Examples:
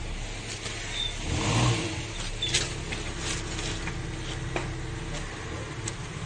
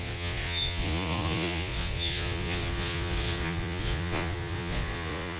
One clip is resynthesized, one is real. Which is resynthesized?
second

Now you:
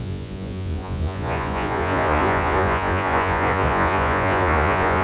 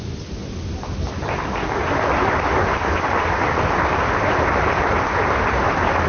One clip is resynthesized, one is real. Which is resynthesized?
first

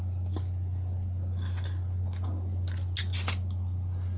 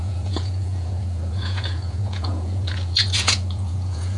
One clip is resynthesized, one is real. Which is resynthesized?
second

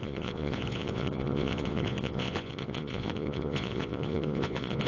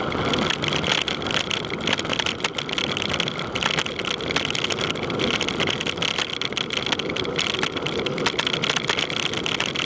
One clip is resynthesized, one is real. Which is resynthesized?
first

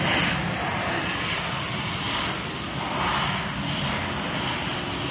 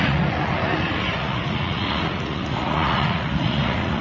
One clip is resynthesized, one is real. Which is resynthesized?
second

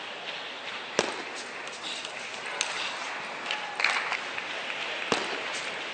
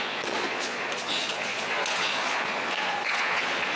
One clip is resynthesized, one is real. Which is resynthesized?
second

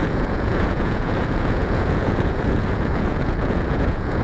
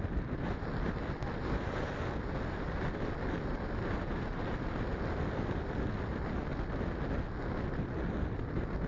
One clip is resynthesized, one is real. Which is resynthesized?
first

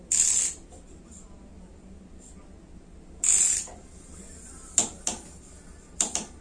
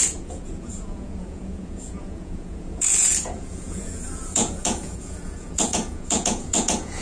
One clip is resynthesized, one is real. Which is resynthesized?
second